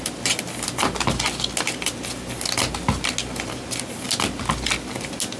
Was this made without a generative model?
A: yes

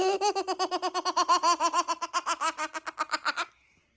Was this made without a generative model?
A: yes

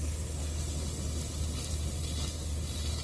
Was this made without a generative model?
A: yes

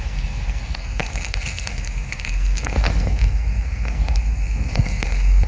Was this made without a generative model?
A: no